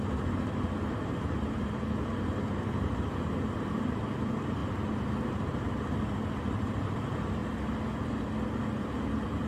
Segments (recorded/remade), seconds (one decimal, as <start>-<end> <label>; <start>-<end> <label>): 0.0-4.6 remade; 4.6-5.3 recorded; 5.3-7.4 remade; 7.4-8.8 recorded; 8.8-9.5 remade